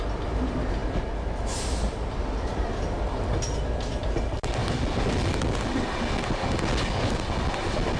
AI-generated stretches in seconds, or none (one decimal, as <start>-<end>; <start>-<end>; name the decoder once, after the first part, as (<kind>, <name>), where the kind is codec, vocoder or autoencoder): none